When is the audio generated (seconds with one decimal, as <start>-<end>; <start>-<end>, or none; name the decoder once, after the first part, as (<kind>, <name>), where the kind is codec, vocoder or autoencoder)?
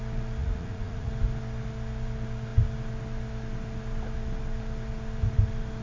0.4-1.1 (vocoder, Vocos)